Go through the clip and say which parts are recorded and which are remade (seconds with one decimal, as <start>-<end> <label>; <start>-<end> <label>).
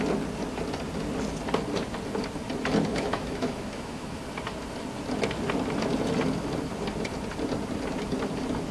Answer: 0.0-2.9 recorded; 2.9-4.2 remade; 4.2-8.7 recorded